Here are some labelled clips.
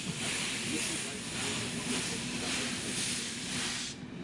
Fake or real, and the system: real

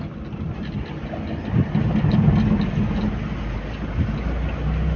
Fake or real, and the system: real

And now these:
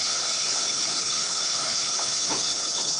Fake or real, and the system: fake, codec, HILCodec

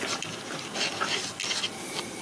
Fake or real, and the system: real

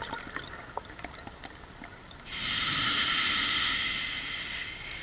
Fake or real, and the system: real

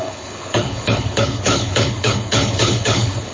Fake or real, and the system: fake, codec, HILCodec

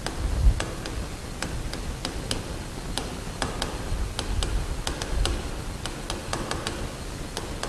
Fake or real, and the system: real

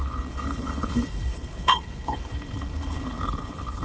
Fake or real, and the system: fake, codec, HILCodec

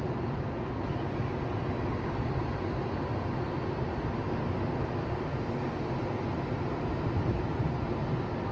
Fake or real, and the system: real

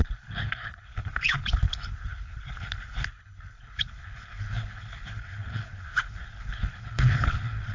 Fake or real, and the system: fake, codec, HILCodec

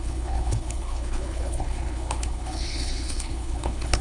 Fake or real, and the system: fake, codec, HILCodec